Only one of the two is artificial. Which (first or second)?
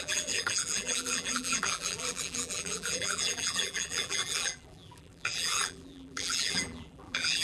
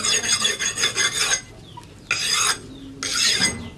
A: first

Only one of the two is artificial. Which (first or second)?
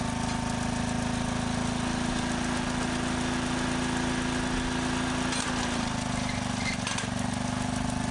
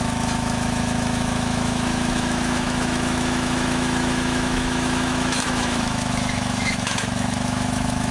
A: second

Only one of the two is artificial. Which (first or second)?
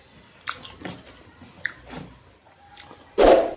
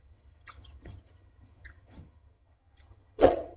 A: second